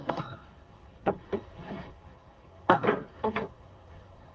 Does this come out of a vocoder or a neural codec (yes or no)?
yes